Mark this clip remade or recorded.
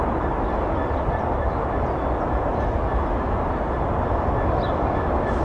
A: recorded